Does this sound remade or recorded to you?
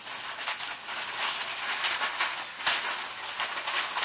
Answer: recorded